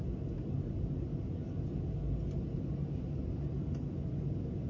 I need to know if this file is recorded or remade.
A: recorded